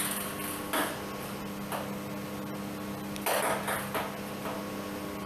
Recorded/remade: recorded